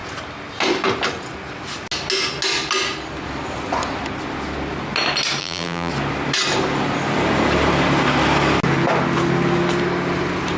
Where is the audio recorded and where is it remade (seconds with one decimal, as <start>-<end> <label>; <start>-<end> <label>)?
0.0-5.4 recorded; 5.4-5.9 remade; 5.9-10.6 recorded